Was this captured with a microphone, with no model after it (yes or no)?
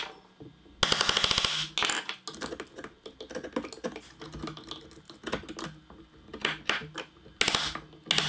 yes